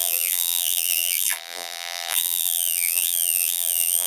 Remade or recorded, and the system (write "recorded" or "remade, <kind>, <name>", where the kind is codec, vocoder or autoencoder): remade, vocoder, BigVGAN v2